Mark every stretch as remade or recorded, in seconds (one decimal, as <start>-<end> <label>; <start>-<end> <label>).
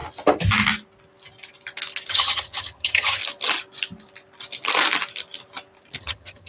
0.0-2.1 recorded; 2.1-3.2 remade; 3.2-6.0 recorded; 6.0-6.5 remade